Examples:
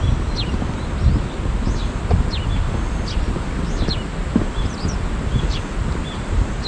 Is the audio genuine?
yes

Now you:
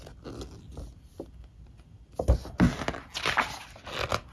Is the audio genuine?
yes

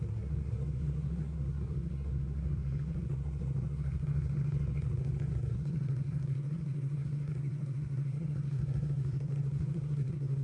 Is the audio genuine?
no